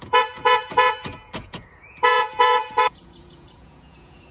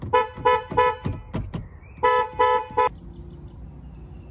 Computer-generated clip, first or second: first